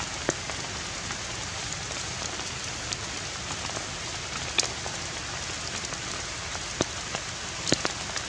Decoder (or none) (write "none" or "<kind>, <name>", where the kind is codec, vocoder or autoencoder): none